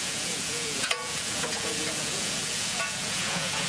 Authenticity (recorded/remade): remade